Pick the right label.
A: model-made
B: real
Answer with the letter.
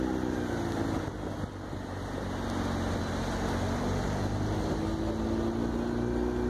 B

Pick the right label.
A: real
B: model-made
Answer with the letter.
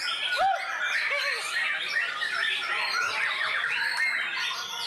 A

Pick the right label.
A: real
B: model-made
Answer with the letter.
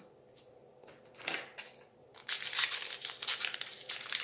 A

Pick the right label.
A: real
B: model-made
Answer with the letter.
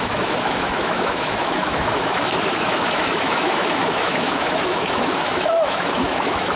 B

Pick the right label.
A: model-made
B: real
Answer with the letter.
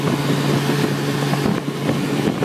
B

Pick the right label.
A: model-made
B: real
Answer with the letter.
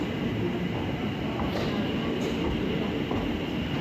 B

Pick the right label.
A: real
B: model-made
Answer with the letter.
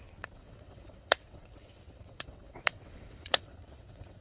B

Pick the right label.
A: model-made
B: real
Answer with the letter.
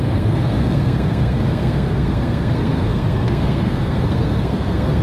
A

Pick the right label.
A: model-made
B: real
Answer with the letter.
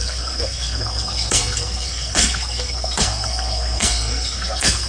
A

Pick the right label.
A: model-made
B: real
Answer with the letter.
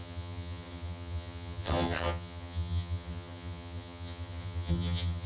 A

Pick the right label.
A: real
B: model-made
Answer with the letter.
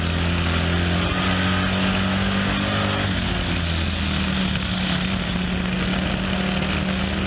A